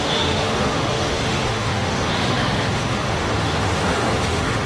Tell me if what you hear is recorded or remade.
remade